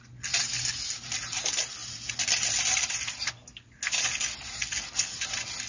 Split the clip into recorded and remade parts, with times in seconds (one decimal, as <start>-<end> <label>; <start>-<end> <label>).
0.0-5.7 recorded